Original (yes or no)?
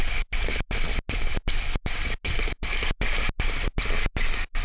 yes